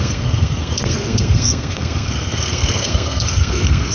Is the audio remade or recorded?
remade